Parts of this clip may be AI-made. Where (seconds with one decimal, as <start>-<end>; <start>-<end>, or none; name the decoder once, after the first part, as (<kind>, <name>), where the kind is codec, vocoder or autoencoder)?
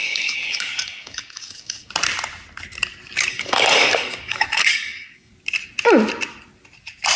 0.0-1.9 (codec, DAC); 3.3-5.3